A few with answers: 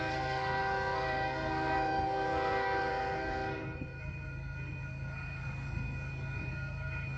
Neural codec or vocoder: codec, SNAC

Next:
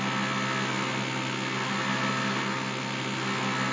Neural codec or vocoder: none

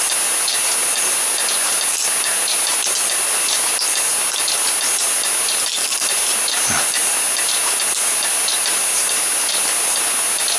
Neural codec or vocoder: none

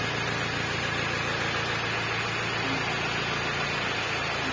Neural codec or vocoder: none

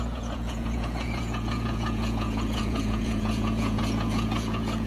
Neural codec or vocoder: vocoder, Vocos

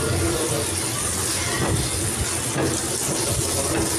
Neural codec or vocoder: none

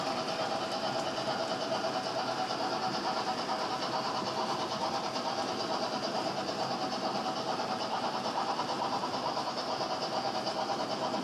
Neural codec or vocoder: none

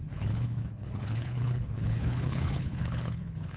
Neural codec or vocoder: codec, HILCodec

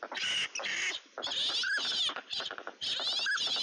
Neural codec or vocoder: none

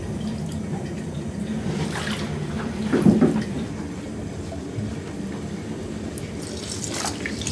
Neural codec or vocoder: vocoder, BigVGAN v2